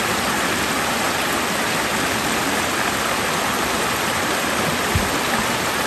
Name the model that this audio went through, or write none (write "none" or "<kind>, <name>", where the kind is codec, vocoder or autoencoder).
none